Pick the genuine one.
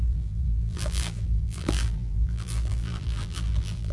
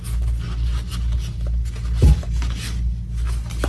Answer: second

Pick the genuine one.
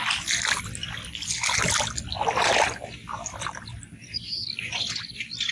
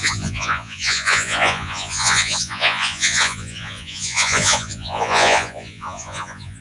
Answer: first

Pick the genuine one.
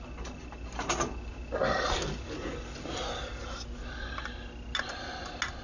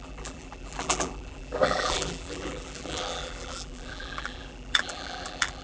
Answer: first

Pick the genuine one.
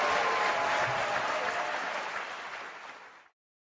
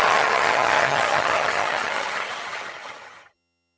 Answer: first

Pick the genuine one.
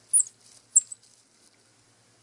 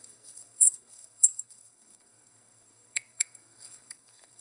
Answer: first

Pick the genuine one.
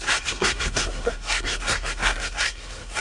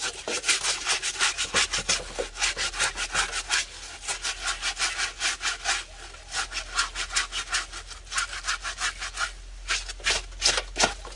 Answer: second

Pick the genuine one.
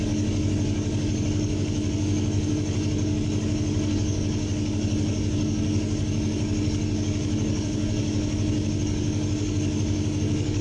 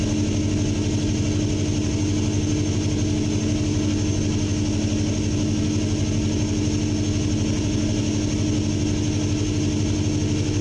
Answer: second